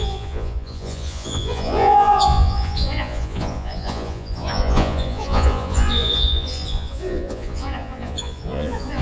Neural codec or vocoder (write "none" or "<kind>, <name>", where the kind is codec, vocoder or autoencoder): vocoder, Vocos